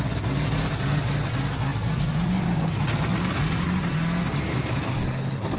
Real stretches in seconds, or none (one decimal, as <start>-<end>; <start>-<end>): 0.0-5.6